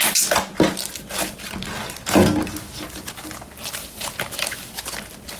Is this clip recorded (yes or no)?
yes